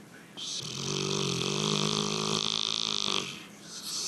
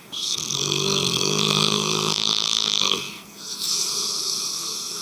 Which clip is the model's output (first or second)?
second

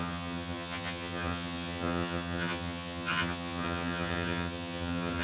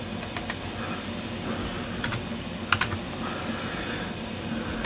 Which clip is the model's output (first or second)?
first